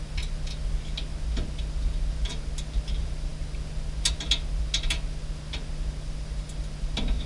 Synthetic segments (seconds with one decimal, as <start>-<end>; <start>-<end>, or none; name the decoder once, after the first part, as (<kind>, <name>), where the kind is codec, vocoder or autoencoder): none